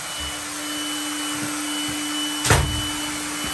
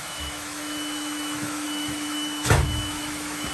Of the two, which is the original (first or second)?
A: first